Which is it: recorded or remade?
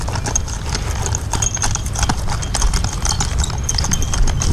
recorded